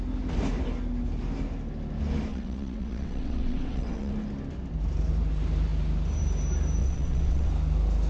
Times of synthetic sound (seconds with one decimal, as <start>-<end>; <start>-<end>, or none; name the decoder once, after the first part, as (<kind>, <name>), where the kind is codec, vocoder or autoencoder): 2.3-4.1 (vocoder, WaveNeXt); 6.8-7.5